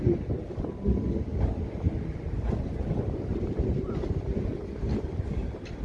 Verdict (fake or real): real